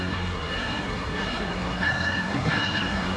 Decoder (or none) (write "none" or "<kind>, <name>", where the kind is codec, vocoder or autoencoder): codec, SNAC